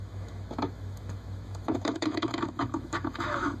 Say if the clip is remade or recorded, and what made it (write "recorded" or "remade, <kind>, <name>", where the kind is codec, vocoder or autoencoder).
remade, autoencoder, DAC-VAE